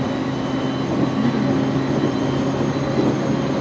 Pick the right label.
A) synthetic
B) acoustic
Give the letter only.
B